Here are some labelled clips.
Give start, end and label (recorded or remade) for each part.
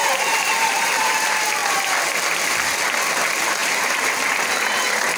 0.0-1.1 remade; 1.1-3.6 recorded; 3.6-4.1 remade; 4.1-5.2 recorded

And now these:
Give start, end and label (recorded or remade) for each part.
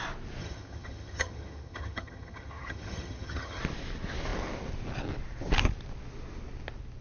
0.0-0.4 recorded; 0.4-3.6 remade; 3.6-7.0 recorded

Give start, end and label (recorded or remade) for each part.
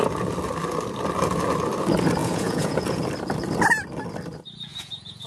0.0-2.2 recorded; 2.2-3.0 remade; 3.0-4.7 recorded; 4.7-5.3 remade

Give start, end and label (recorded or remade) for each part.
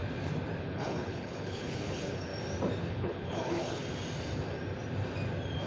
0.0-0.6 recorded; 0.6-2.3 remade; 2.3-2.9 recorded; 2.9-3.8 remade; 3.8-5.7 recorded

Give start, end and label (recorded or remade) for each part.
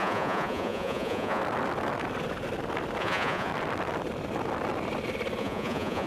0.0-1.4 remade; 1.4-3.0 recorded; 3.0-3.5 remade; 3.5-5.4 recorded; 5.4-6.1 remade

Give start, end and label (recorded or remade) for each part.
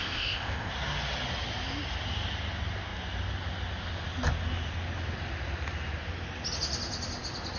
0.0-0.7 remade; 0.7-7.6 recorded